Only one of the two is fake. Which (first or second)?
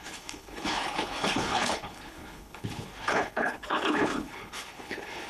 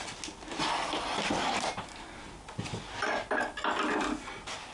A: first